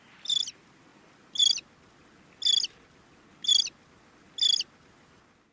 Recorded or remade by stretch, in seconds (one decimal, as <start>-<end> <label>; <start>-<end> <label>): 0.0-5.5 recorded